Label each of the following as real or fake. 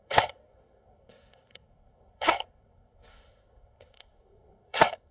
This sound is fake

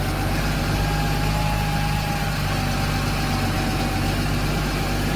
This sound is real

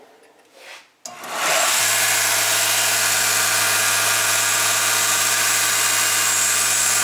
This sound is real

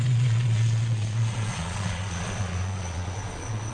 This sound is fake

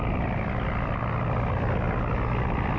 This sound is real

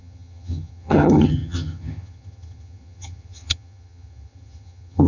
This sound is fake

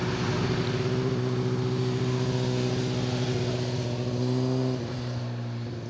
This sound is real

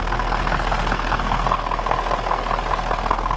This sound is fake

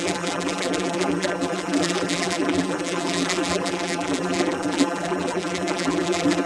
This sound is fake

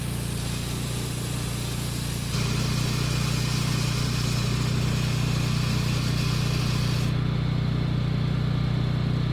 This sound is real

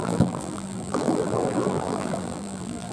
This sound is fake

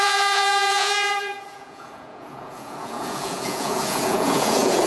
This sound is fake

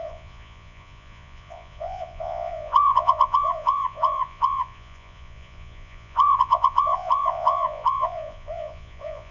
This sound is fake